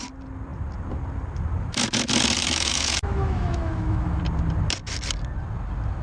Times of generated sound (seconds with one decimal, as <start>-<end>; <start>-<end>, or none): 2.4-4.2